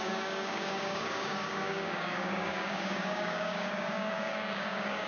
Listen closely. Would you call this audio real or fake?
fake